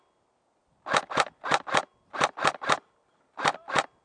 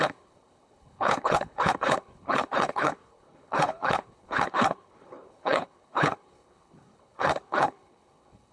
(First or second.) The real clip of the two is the first